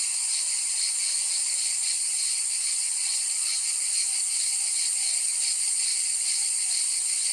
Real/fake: fake